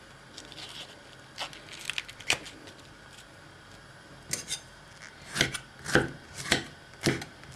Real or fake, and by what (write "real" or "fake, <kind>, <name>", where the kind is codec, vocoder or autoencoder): real